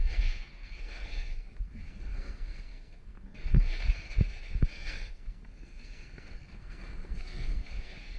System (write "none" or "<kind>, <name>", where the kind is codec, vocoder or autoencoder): codec, SNAC